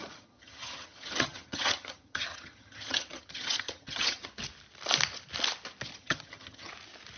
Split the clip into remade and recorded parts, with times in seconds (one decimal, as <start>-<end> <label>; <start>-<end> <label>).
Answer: 0.0-4.3 remade; 4.3-5.9 recorded; 5.9-6.7 remade; 6.7-7.2 recorded